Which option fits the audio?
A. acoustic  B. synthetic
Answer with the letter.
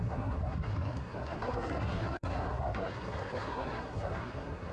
B